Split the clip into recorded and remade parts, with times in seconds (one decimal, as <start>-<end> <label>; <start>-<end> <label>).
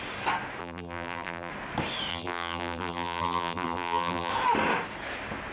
0.0-0.6 recorded; 0.6-1.5 remade; 1.5-2.1 recorded; 2.1-4.3 remade; 4.3-5.5 recorded